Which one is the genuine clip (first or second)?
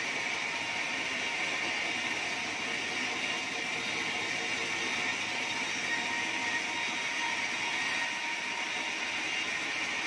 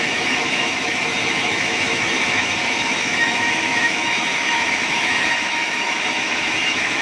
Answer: first